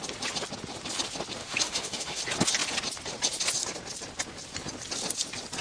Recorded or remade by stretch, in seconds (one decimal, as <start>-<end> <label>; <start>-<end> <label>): 0.0-1.4 recorded; 1.4-2.2 remade; 2.2-5.6 recorded